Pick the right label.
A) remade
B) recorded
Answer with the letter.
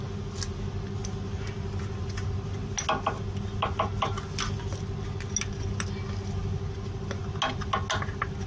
B